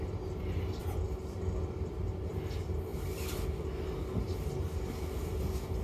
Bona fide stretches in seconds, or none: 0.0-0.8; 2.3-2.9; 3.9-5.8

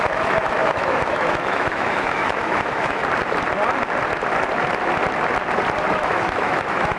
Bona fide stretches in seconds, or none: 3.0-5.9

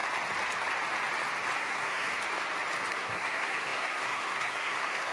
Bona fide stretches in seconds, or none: 0.0-1.6; 2.1-2.9

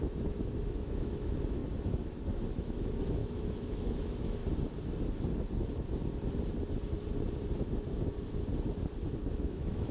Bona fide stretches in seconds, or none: 1.6-2.5; 4.4-9.3

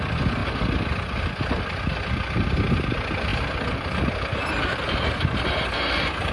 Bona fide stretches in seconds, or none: 0.0-6.3

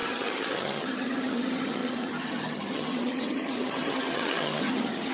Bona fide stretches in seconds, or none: none